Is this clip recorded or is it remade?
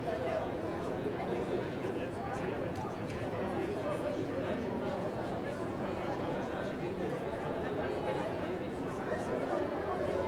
remade